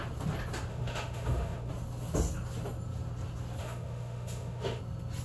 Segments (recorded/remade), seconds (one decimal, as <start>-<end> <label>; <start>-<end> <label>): 0.0-0.7 recorded; 0.7-1.7 remade; 1.7-3.6 recorded; 3.6-4.8 remade; 4.8-5.2 recorded